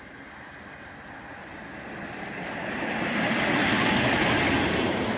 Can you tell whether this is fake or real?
real